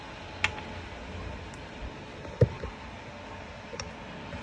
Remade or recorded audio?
recorded